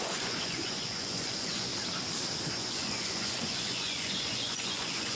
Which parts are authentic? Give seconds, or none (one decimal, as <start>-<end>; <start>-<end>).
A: 1.7-2.5